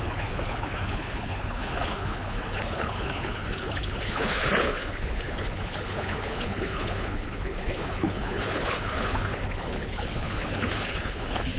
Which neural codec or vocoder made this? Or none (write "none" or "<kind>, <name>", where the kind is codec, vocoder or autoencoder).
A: codec, HILCodec